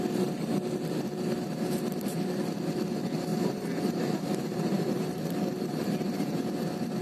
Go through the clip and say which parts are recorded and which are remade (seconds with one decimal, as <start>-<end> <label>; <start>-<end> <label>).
0.0-3.3 recorded; 3.3-6.4 remade; 6.4-7.0 recorded